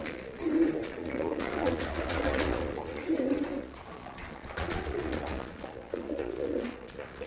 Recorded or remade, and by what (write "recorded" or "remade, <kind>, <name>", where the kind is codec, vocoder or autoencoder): remade, vocoder, Vocos